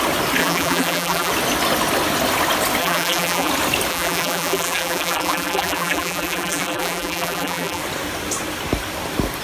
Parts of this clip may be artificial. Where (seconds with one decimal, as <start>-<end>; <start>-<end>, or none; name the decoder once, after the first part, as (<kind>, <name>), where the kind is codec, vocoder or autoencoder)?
0.4-1.3 (vocoder, BigVGAN v2); 2.8-3.5; 3.9-7.8